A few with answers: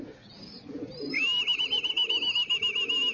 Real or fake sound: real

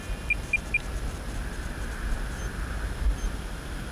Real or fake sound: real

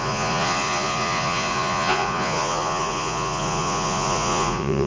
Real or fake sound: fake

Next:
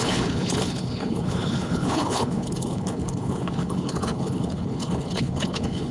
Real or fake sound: fake